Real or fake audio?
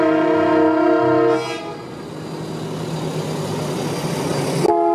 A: real